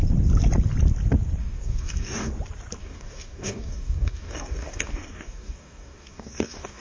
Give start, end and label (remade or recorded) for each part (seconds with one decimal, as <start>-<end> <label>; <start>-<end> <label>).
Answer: 0.0-1.4 recorded; 1.4-2.3 remade; 2.3-2.8 recorded; 2.8-6.8 remade